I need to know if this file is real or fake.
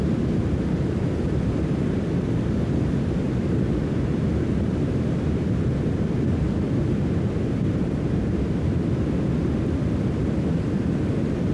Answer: real